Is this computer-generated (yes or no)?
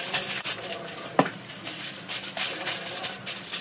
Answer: no